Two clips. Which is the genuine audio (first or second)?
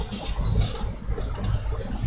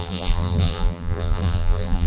first